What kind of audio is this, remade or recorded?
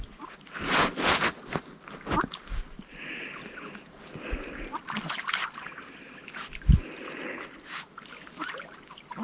recorded